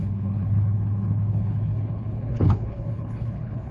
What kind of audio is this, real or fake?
fake